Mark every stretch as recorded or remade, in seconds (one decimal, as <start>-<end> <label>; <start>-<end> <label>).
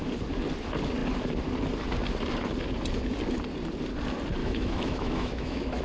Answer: 0.0-4.4 recorded; 4.4-5.8 remade